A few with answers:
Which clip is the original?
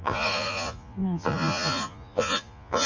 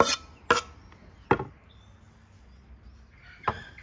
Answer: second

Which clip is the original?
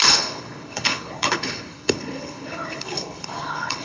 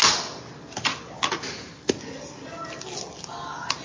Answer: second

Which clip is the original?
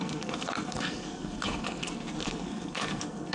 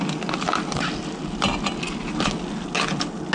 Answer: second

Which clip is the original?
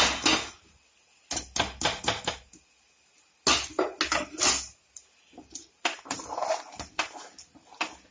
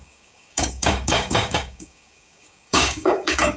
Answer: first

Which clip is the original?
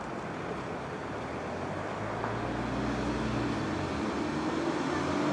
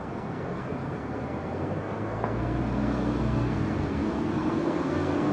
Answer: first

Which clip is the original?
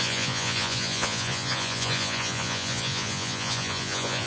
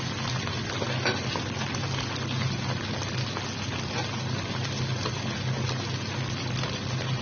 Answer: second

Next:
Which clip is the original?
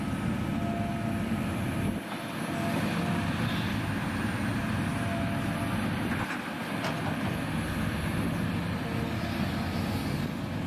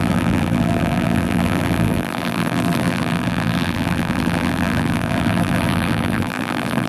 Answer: first